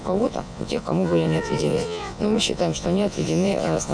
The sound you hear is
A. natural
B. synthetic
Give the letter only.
B